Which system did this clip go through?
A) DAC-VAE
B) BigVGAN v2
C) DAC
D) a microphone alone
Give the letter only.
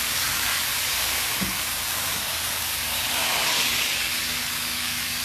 C